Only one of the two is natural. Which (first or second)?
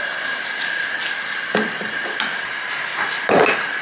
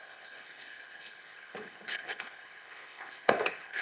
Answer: first